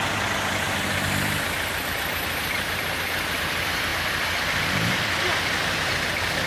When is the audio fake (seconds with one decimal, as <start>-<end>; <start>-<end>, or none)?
none